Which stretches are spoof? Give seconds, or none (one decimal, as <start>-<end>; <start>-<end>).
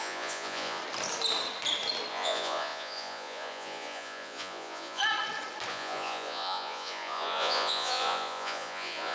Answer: 0.0-0.8; 2.1-5.0; 5.7-9.1